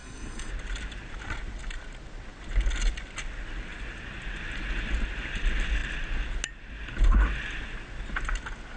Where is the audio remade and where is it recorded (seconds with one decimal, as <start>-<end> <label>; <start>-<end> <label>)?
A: 0.0-0.5 remade; 0.5-8.8 recorded